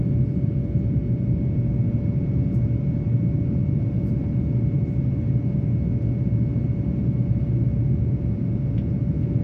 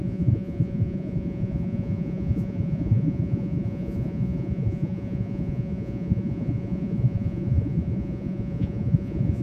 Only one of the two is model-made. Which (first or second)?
second